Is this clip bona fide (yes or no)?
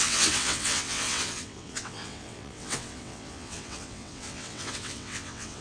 no